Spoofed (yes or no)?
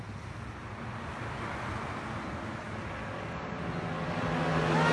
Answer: no